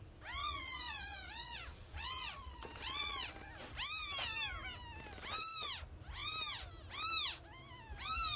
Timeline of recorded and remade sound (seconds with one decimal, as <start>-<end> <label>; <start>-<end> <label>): 0.0-0.4 recorded; 0.4-3.3 remade; 3.3-8.4 recorded